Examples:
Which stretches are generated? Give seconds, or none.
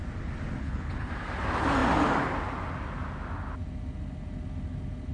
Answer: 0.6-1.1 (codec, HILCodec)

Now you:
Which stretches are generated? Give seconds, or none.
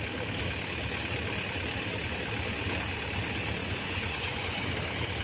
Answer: 3.6-4.7 (vocoder, Vocos)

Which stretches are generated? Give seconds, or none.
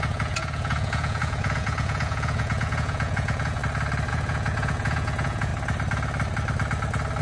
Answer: 0.0-3.6 (vocoder, Vocos); 4.1-5.5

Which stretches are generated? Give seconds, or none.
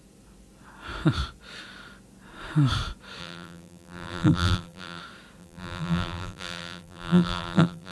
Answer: 3.2-5.0 (vocoder, BigVGAN v2); 5.4-7.9